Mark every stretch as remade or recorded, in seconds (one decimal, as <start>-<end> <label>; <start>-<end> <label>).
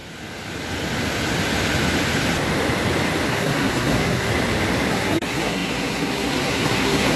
0.0-3.3 recorded; 3.3-4.3 remade; 4.3-4.9 recorded; 4.9-7.2 remade